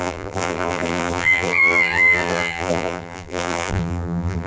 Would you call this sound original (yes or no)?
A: no